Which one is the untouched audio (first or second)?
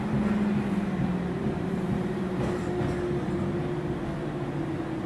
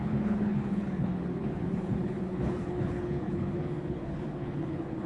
first